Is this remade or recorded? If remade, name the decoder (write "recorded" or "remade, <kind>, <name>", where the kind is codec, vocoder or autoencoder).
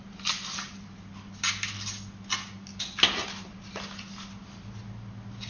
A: recorded